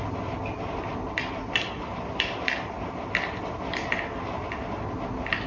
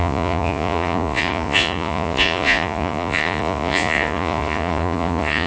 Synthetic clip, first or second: second